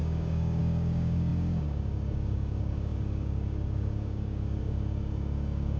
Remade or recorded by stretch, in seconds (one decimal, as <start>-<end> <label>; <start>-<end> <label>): 0.0-5.8 remade